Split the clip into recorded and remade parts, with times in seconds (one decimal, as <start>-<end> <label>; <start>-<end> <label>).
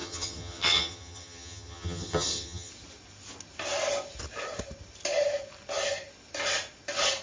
0.0-2.7 remade; 2.7-7.2 recorded